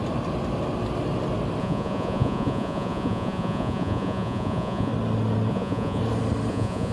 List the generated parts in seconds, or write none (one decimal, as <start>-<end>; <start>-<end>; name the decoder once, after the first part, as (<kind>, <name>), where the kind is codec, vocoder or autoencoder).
1.6-4.9 (vocoder, Vocos); 5.5-6.0; 6.5-6.9